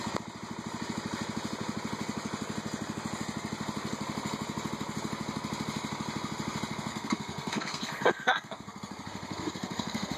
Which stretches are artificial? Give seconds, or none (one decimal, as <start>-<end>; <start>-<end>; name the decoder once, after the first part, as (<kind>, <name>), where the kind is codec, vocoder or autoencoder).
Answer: 6.9-10.2 (codec, SNAC)